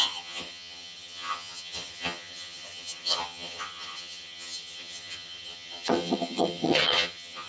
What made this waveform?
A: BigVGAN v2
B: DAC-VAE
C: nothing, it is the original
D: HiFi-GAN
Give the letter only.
D